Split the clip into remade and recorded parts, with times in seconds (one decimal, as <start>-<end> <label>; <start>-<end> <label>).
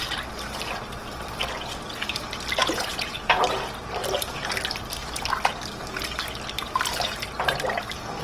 0.0-2.6 recorded; 2.6-3.4 remade; 3.4-8.2 recorded